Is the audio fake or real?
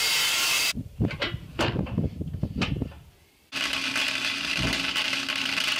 fake